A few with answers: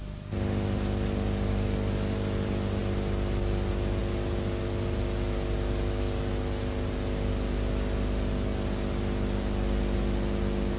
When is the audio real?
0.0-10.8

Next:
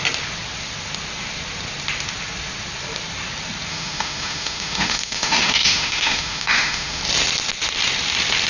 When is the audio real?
0.0-3.7; 7.0-8.5

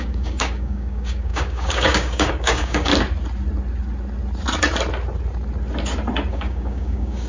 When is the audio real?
2.9-6.3